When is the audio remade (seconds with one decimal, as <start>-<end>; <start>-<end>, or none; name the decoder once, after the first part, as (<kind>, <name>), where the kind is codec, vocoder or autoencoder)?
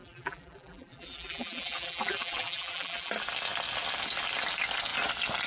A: 0.0-3.1 (vocoder, BigVGAN v2)